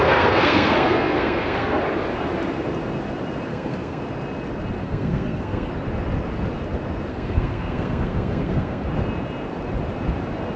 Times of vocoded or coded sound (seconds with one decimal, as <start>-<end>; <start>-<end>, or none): 0.0-1.8; 3.5-4.0; 4.8-5.7; 7.1-8.9